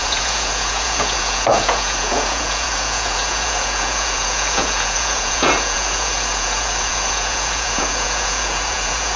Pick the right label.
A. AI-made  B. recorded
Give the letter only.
A